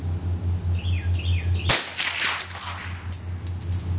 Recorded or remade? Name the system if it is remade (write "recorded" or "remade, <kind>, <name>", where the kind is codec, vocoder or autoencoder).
recorded